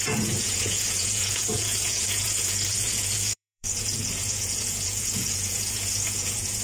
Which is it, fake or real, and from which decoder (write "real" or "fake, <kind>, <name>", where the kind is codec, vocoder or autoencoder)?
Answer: fake, vocoder, Vocos